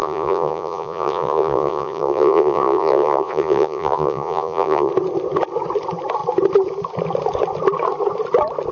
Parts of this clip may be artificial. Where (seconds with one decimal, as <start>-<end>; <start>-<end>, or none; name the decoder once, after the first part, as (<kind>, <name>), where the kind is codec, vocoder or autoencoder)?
0.0-4.9 (vocoder, Vocos)